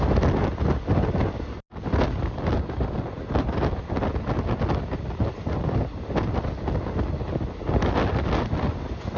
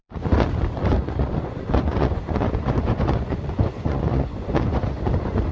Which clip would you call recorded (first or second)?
first